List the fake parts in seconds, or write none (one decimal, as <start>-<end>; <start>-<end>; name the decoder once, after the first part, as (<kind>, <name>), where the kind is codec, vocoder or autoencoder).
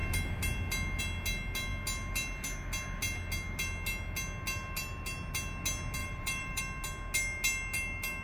6.0-6.6 (vocoder, BigVGAN v2)